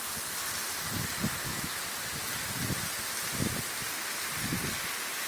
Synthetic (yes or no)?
no